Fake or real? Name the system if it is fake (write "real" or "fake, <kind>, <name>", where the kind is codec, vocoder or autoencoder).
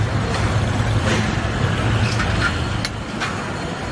real